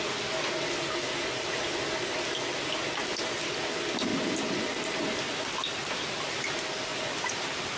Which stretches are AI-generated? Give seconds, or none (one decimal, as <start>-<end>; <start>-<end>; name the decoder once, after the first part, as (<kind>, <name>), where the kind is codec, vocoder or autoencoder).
none